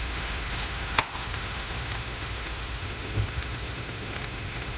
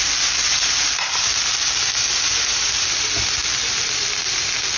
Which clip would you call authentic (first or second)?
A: second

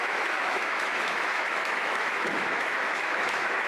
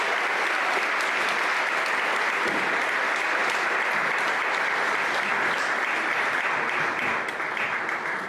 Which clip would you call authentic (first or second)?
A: second